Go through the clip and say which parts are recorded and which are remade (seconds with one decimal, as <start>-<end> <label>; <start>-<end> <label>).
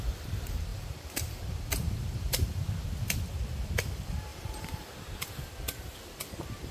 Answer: 0.0-0.7 recorded; 0.7-1.4 remade; 1.4-1.8 recorded; 1.8-2.7 remade; 2.7-4.3 recorded; 4.3-5.4 remade; 5.4-6.7 recorded